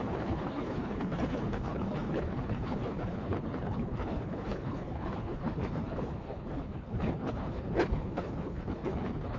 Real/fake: fake